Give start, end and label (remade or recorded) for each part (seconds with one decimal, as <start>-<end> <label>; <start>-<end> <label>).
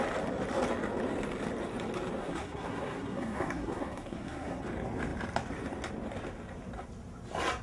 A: 0.0-2.2 recorded; 2.2-4.6 remade; 4.6-7.6 recorded